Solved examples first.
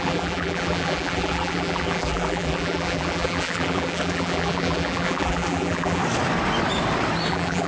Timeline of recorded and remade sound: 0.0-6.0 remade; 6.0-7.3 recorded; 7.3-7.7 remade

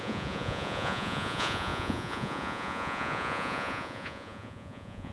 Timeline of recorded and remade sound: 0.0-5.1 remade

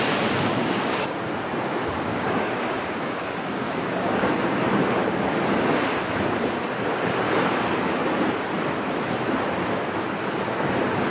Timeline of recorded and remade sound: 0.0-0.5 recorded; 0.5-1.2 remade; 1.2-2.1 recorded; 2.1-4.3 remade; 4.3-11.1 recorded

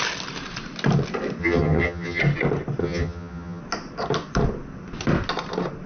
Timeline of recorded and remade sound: 0.0-1.4 recorded; 1.4-2.2 remade; 2.2-2.8 recorded; 2.8-3.6 remade; 3.6-5.9 recorded